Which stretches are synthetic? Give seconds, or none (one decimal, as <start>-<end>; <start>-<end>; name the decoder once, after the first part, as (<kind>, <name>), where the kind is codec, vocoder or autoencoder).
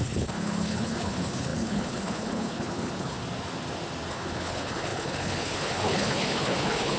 0.0-3.2 (codec, HILCodec); 4.1-7.0